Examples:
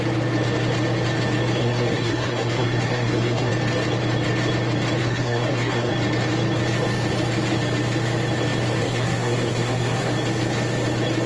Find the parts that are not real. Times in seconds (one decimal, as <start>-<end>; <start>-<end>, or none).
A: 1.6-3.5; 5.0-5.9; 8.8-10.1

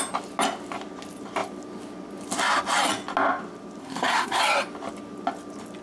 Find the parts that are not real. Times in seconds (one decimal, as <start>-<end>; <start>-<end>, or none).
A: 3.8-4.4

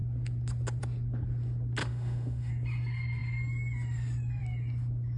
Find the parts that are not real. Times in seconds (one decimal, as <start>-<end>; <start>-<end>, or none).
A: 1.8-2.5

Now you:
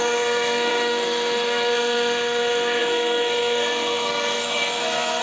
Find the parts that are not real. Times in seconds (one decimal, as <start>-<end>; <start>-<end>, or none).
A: 0.0-5.2

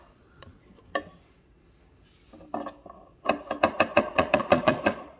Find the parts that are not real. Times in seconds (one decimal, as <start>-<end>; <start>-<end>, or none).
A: 0.0-0.9; 4.0-5.2

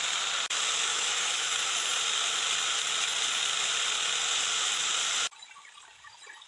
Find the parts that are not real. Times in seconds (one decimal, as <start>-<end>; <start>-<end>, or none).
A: 0.9-1.5